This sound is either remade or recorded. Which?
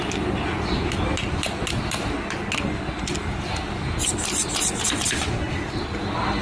recorded